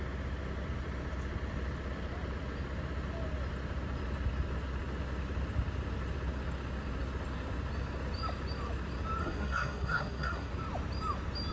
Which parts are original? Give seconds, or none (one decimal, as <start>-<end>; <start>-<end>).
0.0-9.2; 10.5-11.5